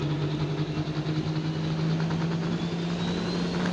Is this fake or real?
real